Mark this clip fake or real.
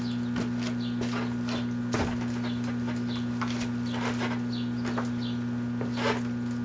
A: real